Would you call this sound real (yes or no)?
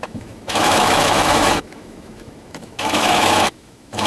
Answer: no